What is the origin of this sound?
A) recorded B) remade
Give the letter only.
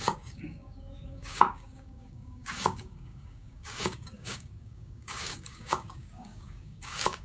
B